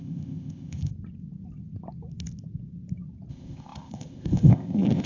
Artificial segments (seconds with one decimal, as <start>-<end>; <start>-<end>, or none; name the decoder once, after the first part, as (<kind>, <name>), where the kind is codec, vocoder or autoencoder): 0.0-0.9 (codec, ZipCodec); 3.3-5.1